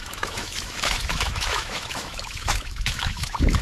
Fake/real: fake